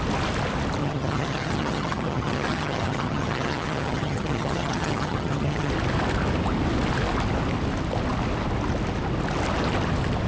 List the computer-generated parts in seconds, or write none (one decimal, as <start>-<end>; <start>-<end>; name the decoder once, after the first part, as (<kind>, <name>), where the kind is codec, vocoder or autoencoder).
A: 0.8-5.7 (vocoder, HiFi-GAN)